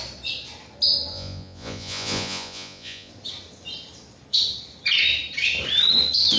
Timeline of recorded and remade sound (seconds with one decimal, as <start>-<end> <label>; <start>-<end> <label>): 0.0-1.1 recorded; 1.1-3.1 remade; 3.1-6.4 recorded